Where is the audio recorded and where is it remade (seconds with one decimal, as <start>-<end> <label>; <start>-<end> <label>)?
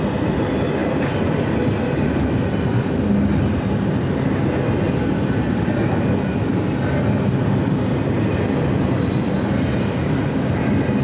0.0-0.8 recorded; 0.8-1.6 remade; 1.6-11.0 recorded